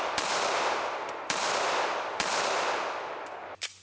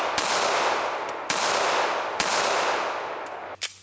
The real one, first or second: second